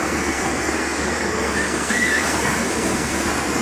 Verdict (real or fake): fake